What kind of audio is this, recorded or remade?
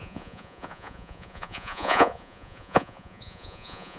remade